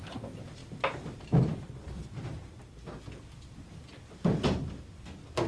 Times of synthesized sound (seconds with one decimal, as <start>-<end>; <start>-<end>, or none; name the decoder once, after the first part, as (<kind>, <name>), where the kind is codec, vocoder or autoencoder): none

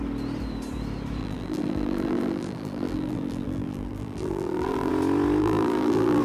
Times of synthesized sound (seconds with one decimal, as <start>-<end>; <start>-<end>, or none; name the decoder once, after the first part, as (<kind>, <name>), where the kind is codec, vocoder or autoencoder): 1.2-4.9 (vocoder, BigVGAN v2); 5.4-6.2

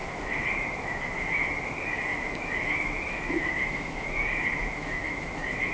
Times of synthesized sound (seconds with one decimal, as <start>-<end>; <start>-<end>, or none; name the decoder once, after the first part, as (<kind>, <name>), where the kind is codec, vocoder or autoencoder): 0.0-1.5 (autoencoder, DAC-VAE); 2.1-5.7